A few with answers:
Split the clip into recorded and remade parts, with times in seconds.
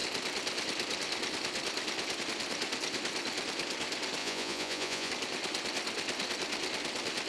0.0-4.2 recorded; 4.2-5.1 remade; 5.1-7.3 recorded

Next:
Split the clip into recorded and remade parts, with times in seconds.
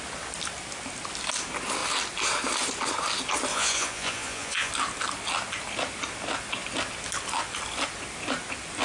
0.0-3.5 recorded; 3.5-4.7 remade; 4.7-8.8 recorded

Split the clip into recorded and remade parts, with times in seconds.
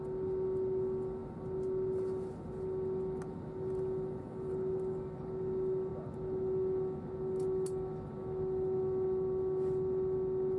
0.0-10.6 recorded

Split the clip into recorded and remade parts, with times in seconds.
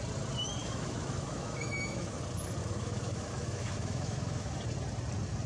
0.0-0.6 recorded; 0.6-2.2 remade; 2.2-2.6 recorded; 2.6-4.5 remade; 4.5-5.5 recorded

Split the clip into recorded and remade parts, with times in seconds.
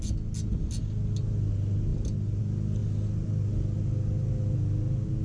0.0-5.2 recorded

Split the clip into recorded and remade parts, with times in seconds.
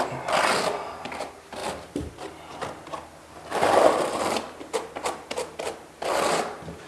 0.0-1.6 recorded; 1.6-2.6 remade; 2.6-3.5 recorded; 3.5-4.9 remade; 4.9-6.9 recorded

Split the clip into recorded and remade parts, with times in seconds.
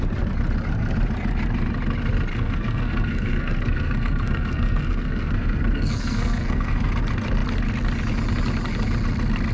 0.0-2.3 recorded; 2.3-6.9 remade; 6.9-9.5 recorded